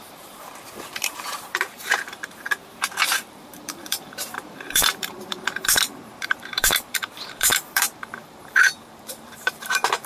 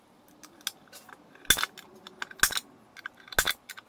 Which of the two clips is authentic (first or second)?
second